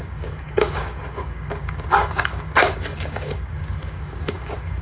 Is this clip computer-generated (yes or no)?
yes